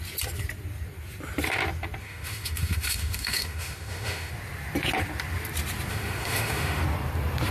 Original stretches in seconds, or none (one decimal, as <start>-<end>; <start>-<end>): 0.0-2.0; 4.3-5.9; 6.8-7.5